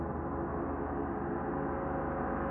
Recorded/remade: recorded